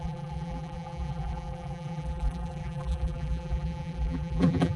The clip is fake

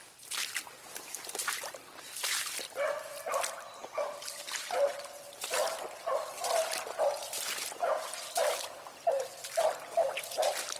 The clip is real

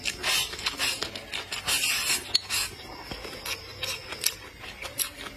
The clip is real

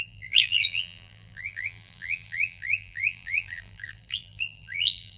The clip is fake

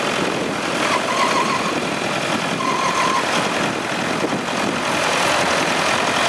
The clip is real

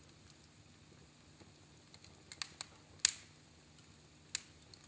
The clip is real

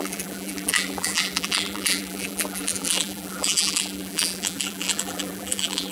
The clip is fake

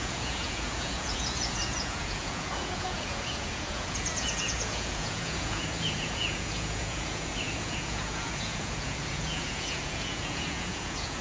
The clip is fake